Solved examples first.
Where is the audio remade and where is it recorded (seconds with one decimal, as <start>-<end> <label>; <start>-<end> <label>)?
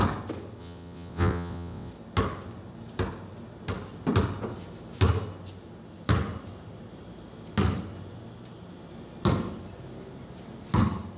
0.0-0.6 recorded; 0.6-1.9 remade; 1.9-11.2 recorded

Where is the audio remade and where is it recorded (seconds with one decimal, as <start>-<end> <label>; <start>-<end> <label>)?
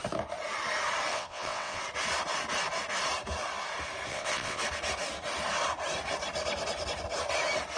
0.0-1.1 recorded; 1.1-1.8 remade; 1.8-4.1 recorded; 4.1-4.6 remade; 4.6-7.8 recorded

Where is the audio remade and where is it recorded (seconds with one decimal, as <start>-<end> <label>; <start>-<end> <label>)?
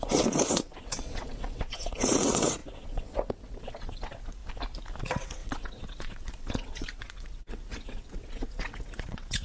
0.0-4.4 remade; 4.4-5.0 recorded; 5.0-9.4 remade